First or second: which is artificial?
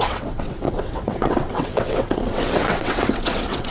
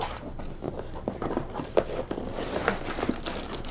first